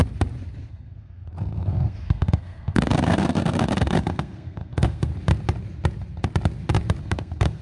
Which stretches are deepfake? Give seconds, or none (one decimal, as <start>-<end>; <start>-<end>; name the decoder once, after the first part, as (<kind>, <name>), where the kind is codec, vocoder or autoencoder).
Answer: 0.7-5.1 (codec, SNAC); 7.0-7.6